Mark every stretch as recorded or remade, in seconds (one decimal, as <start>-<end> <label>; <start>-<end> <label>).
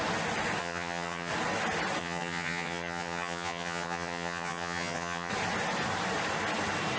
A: 0.0-0.6 recorded; 0.6-1.3 remade; 1.3-2.0 recorded; 2.0-5.3 remade; 5.3-7.0 recorded